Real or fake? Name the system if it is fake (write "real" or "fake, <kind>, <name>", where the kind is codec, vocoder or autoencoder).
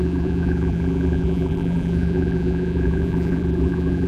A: fake, vocoder, BigVGAN v2